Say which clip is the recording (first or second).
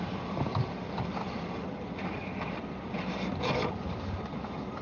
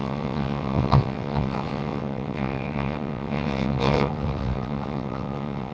first